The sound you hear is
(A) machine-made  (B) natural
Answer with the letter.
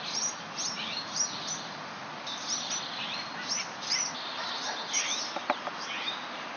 B